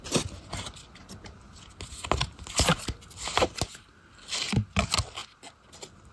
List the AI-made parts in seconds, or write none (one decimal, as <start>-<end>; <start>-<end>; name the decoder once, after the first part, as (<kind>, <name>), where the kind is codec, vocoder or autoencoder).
none